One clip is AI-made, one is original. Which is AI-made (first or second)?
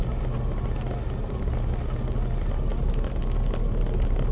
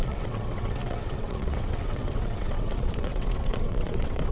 second